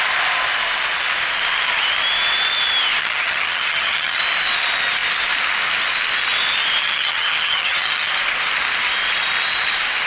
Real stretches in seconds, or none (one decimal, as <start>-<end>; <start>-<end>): 0.0-3.0; 4.2-6.8; 8.1-10.1